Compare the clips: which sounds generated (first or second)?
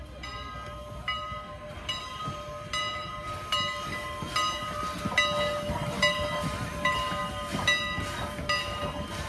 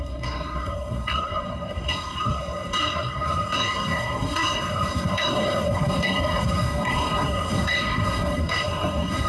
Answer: second